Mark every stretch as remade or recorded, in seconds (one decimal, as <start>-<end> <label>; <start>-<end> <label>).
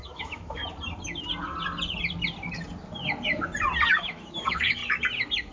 0.0-0.6 remade; 0.6-3.9 recorded; 3.9-4.8 remade; 4.8-5.5 recorded